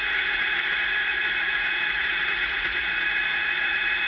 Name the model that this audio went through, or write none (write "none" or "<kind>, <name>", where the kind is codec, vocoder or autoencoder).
vocoder, Vocos